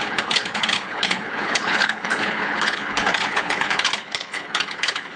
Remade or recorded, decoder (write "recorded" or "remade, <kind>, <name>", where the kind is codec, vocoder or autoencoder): remade, codec, HILCodec